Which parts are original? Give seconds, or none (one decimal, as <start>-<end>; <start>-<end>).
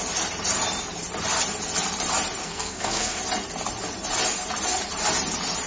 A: 0.0-2.4; 3.2-5.7